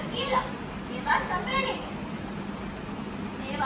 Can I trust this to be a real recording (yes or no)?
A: yes